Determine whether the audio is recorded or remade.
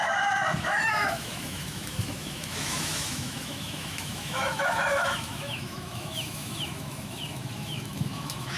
remade